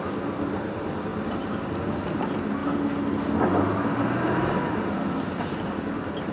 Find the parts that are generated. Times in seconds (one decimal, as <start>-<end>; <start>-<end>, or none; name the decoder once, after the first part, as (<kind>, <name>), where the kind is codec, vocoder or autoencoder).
none

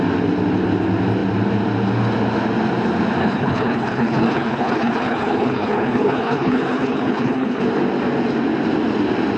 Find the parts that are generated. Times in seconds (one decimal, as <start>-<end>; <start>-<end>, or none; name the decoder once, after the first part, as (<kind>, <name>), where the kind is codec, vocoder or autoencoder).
3.2-7.6 (codec, HILCodec)

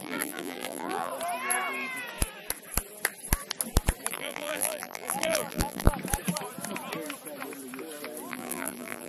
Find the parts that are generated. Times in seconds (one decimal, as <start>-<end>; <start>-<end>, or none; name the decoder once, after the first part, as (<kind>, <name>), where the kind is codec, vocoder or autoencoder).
0.0-1.1 (vocoder, BigVGAN v2); 4.1-5.9; 8.3-9.1

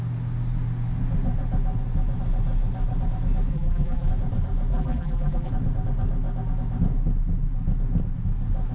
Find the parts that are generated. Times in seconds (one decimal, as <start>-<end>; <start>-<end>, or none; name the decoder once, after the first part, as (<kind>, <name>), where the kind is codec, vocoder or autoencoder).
3.5-4.1 (vocoder, BigVGAN v2); 4.7-5.5

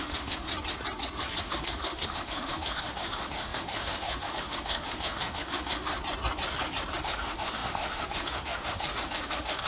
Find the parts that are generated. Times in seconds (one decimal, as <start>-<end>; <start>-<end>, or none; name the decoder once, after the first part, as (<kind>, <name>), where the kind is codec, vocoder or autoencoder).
0.0-0.5 (autoencoder, DAC-VAE); 1.4-5.9; 7.0-9.7

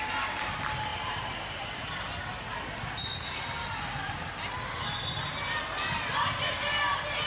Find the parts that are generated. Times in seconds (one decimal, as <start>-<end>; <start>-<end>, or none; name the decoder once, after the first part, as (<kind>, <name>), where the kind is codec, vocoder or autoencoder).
none

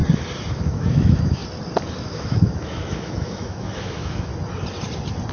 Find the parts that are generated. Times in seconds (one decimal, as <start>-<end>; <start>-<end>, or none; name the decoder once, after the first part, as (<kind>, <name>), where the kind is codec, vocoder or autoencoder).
0.5-1.4 (autoencoder, DAC-VAE); 2.1-4.3

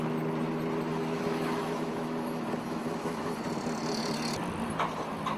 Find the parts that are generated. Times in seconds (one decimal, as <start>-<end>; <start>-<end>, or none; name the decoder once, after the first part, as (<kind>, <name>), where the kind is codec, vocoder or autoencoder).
0.9-3.4 (autoencoder, DAC-VAE)